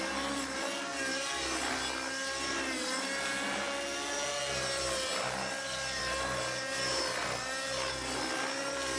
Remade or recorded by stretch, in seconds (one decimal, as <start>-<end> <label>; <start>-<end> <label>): 0.0-9.0 recorded